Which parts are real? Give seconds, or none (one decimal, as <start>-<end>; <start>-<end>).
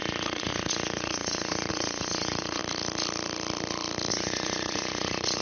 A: 2.6-4.1